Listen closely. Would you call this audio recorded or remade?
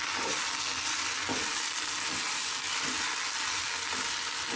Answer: recorded